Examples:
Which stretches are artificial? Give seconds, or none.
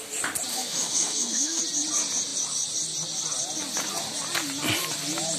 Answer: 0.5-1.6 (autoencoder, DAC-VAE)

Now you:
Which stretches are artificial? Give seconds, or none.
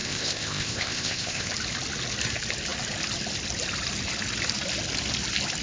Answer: 0.0-1.5 (codec, ZipCodec)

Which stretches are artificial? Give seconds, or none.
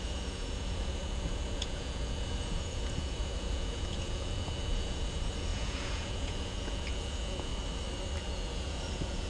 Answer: 0.0-7.5 (vocoder, Vocos); 8.2-9.3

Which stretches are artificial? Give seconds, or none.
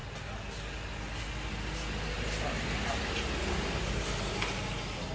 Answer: none